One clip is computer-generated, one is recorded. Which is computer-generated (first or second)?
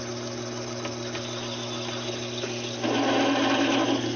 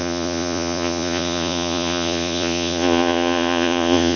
second